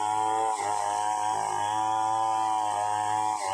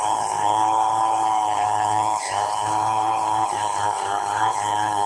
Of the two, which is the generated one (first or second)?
second